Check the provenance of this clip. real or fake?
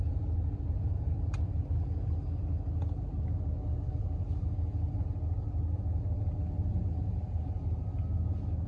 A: real